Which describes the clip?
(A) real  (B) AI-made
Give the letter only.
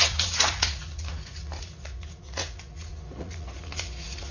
B